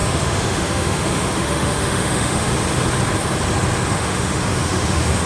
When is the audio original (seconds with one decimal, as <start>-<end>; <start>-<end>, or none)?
2.5-3.9